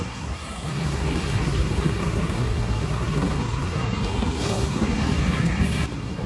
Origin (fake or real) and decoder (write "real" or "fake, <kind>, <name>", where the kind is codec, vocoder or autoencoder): fake, codec, SNAC